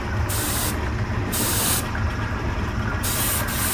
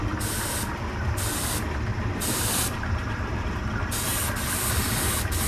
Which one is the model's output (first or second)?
second